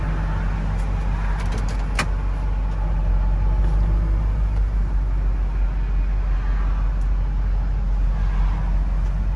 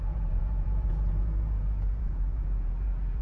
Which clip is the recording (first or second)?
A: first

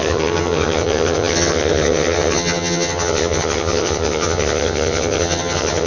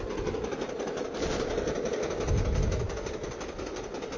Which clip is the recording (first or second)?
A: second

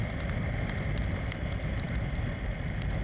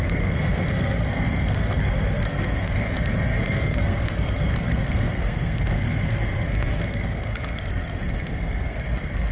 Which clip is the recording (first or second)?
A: first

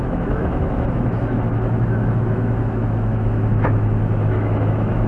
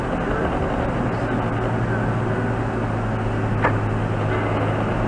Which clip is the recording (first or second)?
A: second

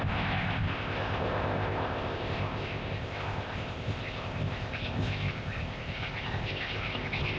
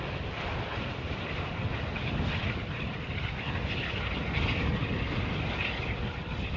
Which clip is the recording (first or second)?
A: second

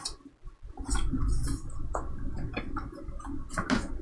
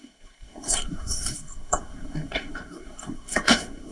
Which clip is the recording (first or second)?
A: first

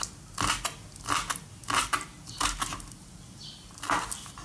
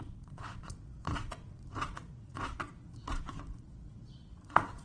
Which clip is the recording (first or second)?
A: first